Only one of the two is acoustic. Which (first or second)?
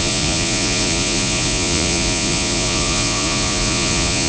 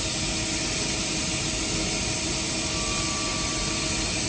second